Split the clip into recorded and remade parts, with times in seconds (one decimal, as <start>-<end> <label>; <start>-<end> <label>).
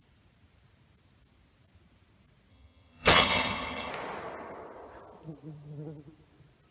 0.0-2.5 recorded; 2.5-3.9 remade; 3.9-6.7 recorded